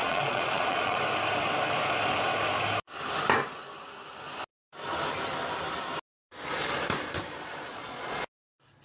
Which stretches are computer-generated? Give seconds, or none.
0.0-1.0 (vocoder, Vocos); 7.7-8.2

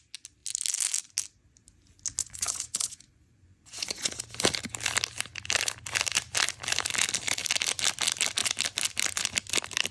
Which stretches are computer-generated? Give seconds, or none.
2.2-4.2 (vocoder, Vocos)